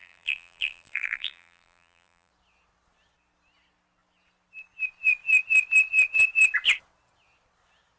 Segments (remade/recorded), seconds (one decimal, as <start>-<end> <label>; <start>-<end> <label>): 0.0-2.3 remade; 2.3-8.0 recorded